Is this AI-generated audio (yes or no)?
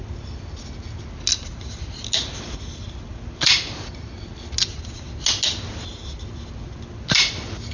no